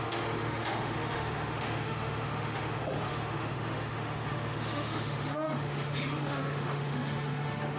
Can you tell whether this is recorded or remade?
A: remade